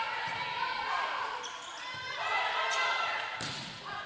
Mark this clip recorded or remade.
recorded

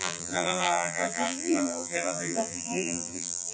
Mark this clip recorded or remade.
remade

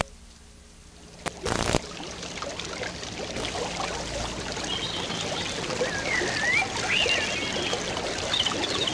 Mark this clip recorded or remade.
recorded